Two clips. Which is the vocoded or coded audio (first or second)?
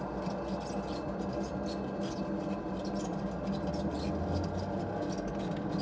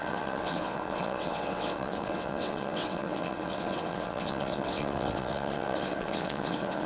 second